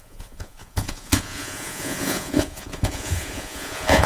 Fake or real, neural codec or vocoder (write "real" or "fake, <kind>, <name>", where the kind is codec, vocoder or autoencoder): fake, vocoder, Vocos